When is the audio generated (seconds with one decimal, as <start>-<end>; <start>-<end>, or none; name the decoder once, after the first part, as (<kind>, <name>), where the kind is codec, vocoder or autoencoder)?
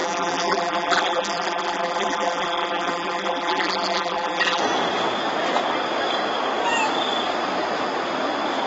0.0-4.6 (vocoder, BigVGAN v2)